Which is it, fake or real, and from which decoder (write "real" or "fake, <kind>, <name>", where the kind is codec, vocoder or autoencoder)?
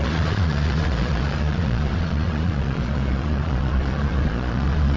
fake, vocoder, Vocos